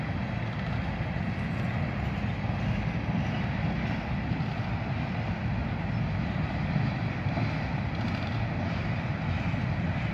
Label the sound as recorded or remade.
recorded